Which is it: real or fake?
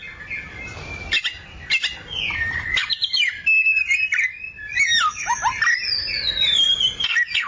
real